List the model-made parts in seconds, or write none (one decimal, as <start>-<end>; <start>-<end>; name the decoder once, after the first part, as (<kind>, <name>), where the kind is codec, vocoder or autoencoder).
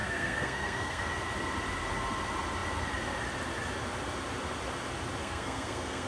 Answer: 0.0-1.1 (codec, SNAC); 5.2-6.1